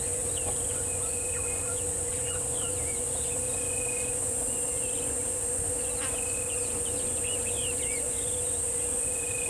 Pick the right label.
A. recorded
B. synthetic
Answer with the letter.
B